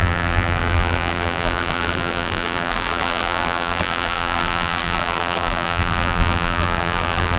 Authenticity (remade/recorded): remade